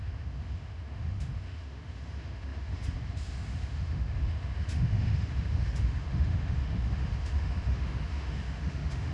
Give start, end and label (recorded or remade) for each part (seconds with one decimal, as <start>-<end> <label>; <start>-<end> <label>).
0.0-9.1 remade